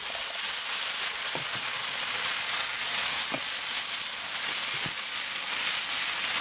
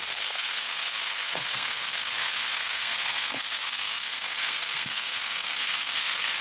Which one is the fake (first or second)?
second